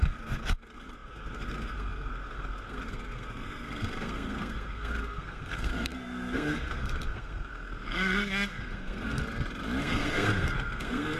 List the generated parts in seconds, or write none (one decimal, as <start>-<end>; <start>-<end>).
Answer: 0.0-9.2; 9.8-11.2